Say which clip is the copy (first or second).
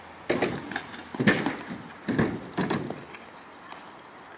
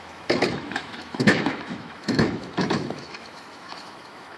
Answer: second